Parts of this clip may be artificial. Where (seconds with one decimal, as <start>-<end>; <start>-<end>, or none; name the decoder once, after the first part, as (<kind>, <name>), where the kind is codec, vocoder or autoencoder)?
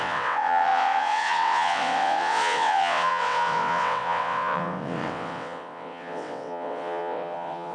0.0-7.7 (vocoder, WaveNeXt)